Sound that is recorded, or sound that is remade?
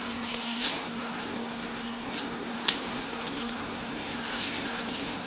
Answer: remade